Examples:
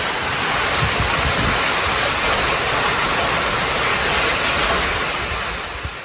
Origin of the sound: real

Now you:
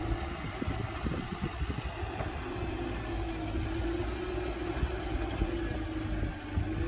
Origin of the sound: real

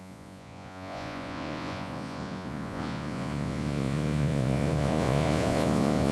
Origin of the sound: fake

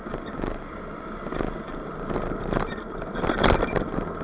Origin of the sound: real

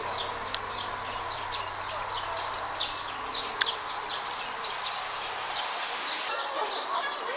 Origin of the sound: real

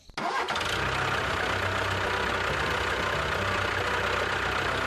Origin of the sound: real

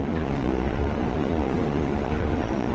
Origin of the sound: fake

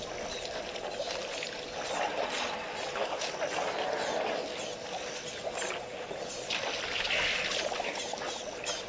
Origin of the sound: real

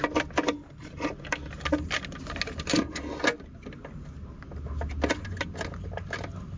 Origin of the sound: real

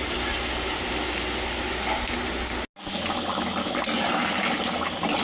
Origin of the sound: real